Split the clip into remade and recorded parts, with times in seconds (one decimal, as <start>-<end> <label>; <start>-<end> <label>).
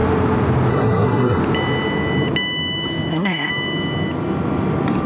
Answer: 0.0-0.7 recorded; 0.7-1.4 remade; 1.4-3.1 recorded; 3.1-3.5 remade; 3.5-5.1 recorded